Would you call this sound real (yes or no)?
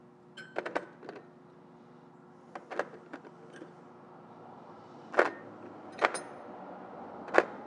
yes